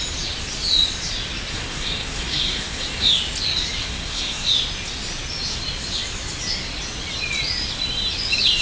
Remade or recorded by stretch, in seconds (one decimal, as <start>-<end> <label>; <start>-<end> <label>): 0.0-1.5 recorded; 1.5-3.1 remade; 3.1-3.8 recorded; 3.8-4.5 remade; 4.5-8.6 recorded